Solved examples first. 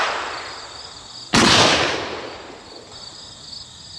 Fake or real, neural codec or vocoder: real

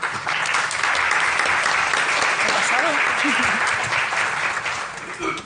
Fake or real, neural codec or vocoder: real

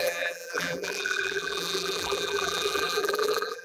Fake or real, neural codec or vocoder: fake, vocoder, BigVGAN v2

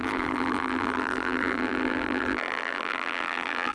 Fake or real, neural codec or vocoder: fake, vocoder, BigVGAN v2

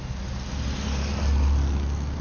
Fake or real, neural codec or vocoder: real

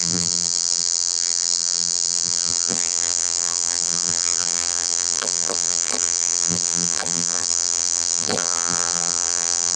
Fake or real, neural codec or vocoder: fake, vocoder, BigVGAN v2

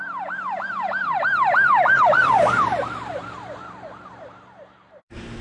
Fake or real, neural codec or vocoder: fake, vocoder, BigVGAN v2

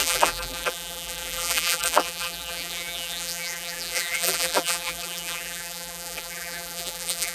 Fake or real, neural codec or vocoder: fake, vocoder, BigVGAN v2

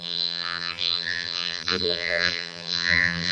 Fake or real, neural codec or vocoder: fake, vocoder, BigVGAN v2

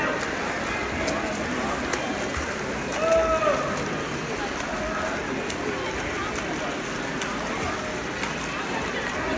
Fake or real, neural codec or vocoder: real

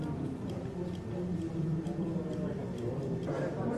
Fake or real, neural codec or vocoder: fake, vocoder, BigVGAN v2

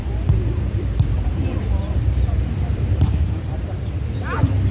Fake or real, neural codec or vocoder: fake, vocoder, BigVGAN v2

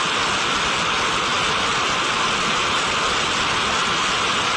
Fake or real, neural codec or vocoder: real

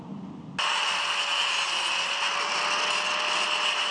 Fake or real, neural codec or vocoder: real